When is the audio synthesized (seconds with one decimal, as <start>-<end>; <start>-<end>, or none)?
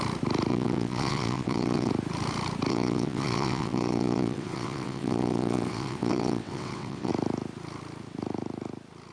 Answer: 0.5-1.9; 2.7-7.1